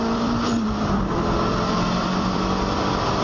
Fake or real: fake